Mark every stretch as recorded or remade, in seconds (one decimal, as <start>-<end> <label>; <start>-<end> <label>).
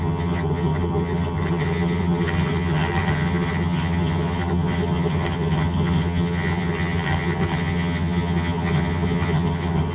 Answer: 0.0-9.9 remade